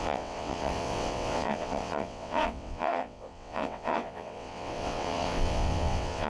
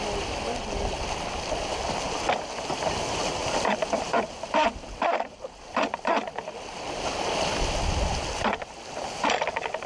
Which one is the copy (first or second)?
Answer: first